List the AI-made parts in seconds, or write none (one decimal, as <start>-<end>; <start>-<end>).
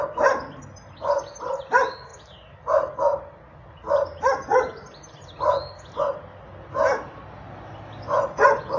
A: none